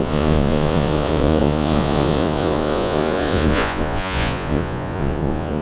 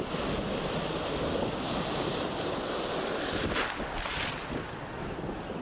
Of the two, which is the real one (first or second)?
second